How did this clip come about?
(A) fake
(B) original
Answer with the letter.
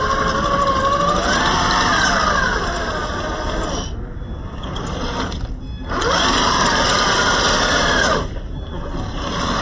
B